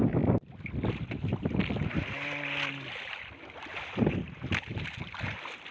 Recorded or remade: recorded